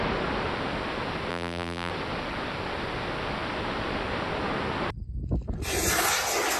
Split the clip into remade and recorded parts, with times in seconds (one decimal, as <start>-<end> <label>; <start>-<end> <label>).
0.0-1.3 recorded; 1.3-1.9 remade; 1.9-6.6 recorded